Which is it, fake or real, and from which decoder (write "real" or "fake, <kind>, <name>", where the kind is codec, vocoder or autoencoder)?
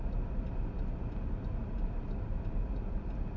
real